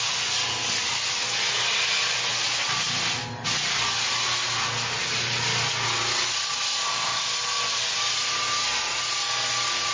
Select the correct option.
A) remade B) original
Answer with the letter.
B